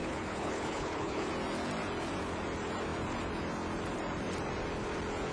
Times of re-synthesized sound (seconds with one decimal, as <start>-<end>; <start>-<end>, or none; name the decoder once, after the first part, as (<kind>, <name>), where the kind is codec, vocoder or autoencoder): 0.0-1.3 (codec, HILCodec)

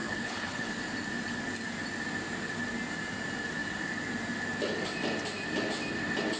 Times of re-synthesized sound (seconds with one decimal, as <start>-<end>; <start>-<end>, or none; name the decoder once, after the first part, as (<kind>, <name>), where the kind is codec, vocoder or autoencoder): 0.0-0.7 (codec, HILCodec)

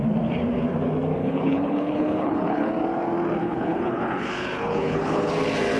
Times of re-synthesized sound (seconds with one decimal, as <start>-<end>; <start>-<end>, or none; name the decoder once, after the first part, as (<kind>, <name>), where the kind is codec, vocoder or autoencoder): 1.2-2.7 (codec, HILCodec); 3.4-5.3

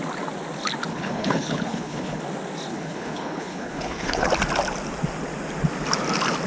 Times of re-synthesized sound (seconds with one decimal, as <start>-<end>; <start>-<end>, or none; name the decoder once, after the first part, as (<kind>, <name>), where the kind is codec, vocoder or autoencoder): 0.9-2.2 (codec, HILCodec); 2.7-4.3

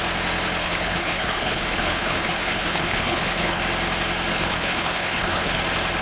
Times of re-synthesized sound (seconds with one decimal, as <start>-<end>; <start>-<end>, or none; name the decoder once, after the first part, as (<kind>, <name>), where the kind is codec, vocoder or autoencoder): 0.6-3.6 (codec, HILCodec); 4.3-5.6

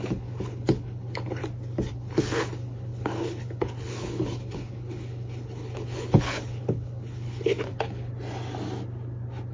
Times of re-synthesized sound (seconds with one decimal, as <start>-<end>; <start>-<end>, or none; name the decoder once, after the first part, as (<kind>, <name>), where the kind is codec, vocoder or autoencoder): 0.0-1.4 (codec, HILCodec); 1.9-8.1